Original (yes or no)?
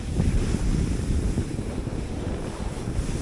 yes